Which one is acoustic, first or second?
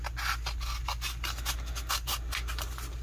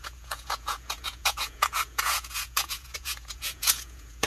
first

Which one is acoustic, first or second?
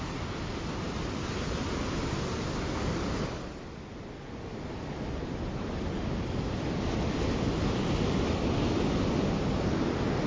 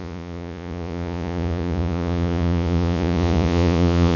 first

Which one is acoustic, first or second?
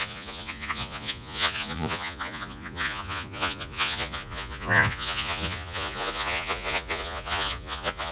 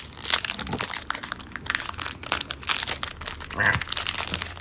second